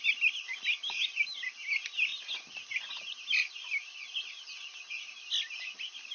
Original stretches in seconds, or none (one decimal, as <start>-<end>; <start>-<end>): 0.0-6.1